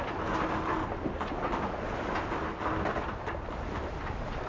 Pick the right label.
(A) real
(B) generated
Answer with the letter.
A